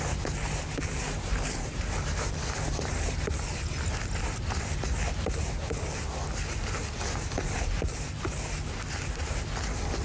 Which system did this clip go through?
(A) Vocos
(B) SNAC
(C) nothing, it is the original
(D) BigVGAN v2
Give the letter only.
C